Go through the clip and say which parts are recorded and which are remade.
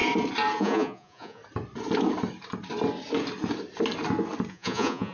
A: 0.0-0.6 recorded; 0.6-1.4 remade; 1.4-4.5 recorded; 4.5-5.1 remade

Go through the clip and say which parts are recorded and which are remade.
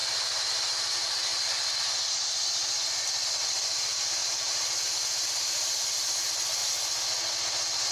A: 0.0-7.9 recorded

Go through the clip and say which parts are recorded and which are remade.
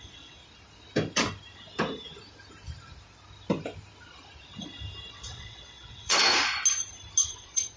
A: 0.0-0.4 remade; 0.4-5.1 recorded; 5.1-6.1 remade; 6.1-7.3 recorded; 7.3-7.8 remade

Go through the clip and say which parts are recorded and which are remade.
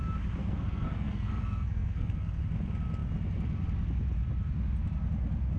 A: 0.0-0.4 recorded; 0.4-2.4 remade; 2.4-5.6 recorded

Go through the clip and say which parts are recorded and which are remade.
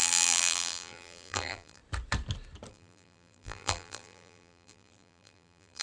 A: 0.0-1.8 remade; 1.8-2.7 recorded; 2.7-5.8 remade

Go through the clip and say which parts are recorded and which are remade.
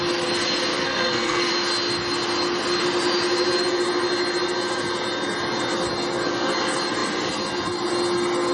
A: 0.0-0.8 recorded; 0.8-1.5 remade; 1.5-8.5 recorded